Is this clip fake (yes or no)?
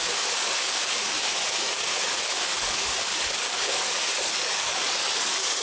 yes